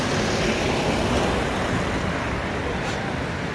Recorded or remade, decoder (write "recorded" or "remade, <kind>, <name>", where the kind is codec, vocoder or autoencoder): recorded